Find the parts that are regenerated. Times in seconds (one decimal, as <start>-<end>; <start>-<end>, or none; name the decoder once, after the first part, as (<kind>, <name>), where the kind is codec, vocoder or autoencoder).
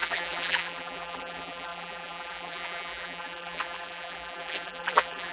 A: 0.0-5.3 (vocoder, BigVGAN v2)